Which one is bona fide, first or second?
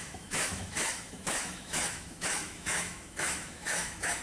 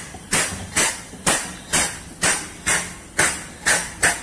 second